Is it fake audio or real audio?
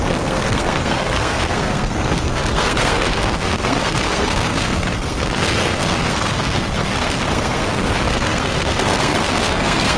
fake